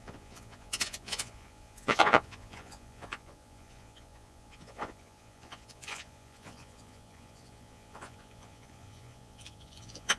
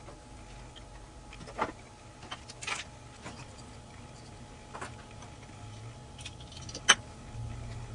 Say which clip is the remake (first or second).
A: first